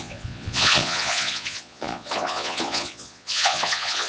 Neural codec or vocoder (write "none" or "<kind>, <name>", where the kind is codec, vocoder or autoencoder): vocoder, Vocos